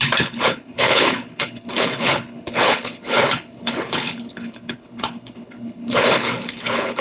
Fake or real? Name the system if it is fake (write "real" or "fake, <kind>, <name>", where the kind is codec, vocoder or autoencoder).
fake, codec, HILCodec